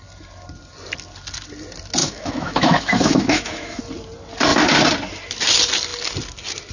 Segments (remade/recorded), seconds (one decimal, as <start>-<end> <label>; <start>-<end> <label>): 0.0-2.0 recorded; 2.0-3.8 remade; 3.8-6.7 recorded